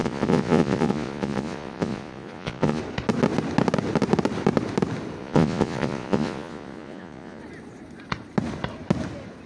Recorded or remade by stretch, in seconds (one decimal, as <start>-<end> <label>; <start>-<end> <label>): 0.0-2.8 remade; 2.8-5.2 recorded; 5.2-7.4 remade; 7.4-9.5 recorded